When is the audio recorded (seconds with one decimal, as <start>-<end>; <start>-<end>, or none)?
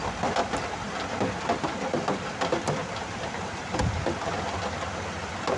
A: 0.0-5.6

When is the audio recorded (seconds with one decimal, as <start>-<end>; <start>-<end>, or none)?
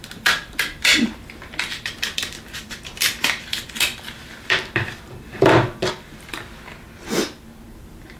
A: 6.3-7.7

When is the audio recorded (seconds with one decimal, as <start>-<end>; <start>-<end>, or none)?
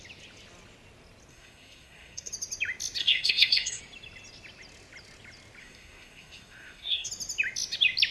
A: 0.0-1.3; 2.3-3.0; 3.8-5.6; 7.1-8.1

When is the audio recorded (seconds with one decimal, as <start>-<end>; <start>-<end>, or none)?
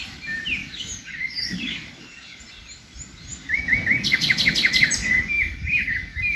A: 0.0-0.6; 2.4-3.3; 4.3-5.0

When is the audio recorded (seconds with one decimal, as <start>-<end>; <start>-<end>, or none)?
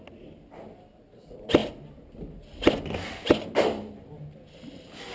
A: 0.0-5.1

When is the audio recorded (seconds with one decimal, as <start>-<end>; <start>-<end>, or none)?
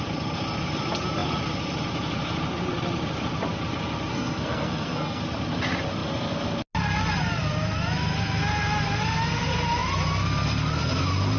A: 0.0-4.1; 5.2-11.4